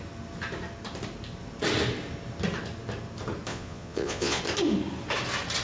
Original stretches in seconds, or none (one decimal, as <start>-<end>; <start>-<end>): 0.0-3.5; 4.4-5.6